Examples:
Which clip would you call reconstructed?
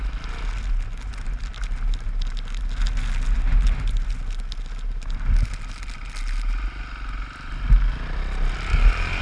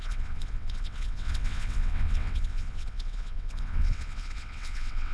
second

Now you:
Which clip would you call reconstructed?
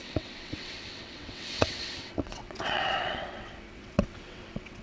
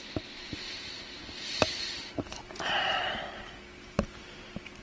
first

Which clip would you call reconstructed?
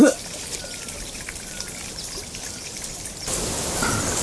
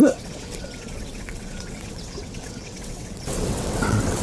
second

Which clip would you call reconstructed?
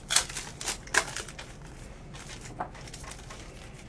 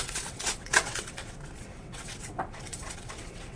second